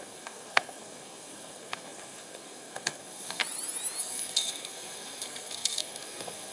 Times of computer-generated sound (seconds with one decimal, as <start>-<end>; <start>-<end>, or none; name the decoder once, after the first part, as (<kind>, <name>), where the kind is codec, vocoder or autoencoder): 0.0-3.4 (codec, SNAC); 4.0-6.5